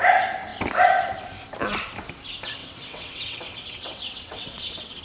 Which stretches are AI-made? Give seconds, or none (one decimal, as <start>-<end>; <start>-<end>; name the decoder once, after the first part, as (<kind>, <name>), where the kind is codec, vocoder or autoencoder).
2.6-5.0 (vocoder, WaveNeXt)